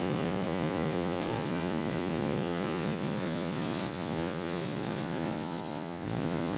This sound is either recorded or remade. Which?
remade